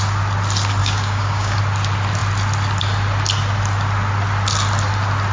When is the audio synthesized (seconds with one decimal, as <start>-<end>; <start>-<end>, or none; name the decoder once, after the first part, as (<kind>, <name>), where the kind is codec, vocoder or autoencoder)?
0.8-1.6 (codec, DAC)